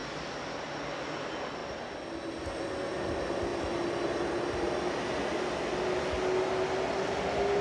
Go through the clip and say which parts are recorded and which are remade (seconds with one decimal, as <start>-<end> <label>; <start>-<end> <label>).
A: 0.0-7.6 recorded